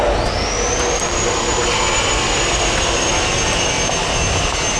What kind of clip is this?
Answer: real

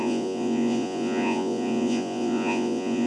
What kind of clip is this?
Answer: fake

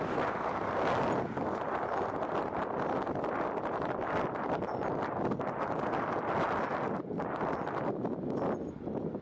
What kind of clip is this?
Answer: real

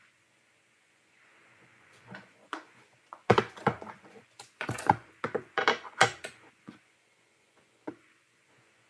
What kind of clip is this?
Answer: fake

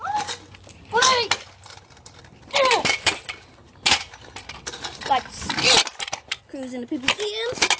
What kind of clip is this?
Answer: real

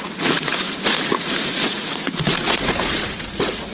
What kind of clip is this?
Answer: fake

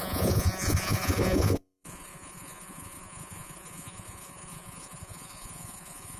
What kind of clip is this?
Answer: fake